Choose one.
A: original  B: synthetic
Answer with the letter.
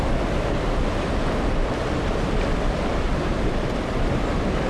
A